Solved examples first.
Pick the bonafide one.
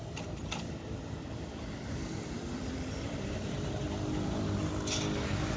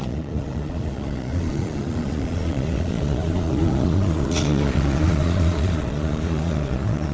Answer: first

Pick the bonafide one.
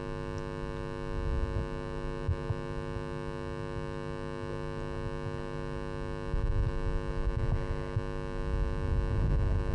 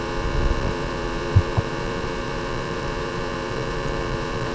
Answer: first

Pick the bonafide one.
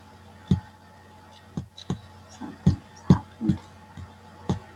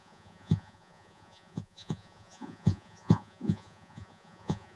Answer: first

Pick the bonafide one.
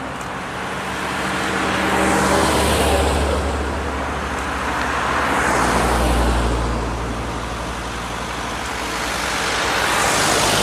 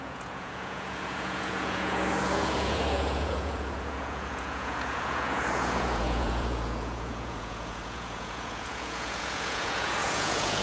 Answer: first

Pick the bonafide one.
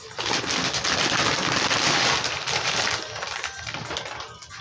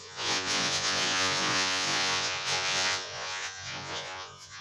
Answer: first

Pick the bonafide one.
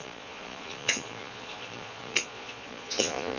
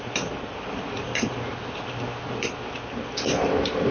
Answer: second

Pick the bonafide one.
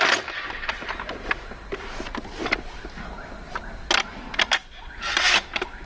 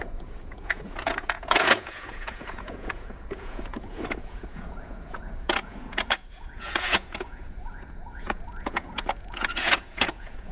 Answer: first